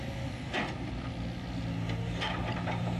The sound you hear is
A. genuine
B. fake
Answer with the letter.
A